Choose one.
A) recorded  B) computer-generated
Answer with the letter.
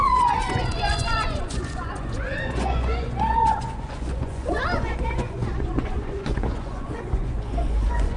B